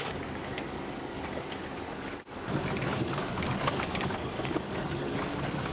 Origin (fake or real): fake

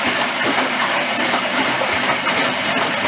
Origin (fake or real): real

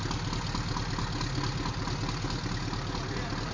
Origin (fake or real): real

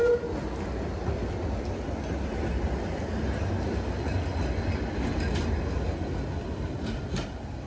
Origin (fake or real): real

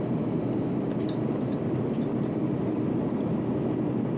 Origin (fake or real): real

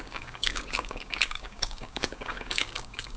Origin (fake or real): fake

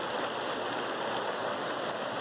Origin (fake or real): real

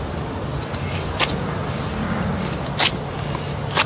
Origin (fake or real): real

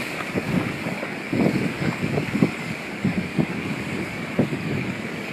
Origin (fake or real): fake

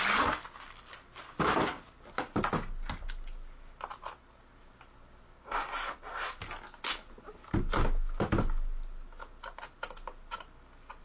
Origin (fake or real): real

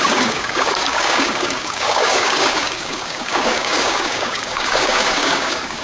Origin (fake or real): fake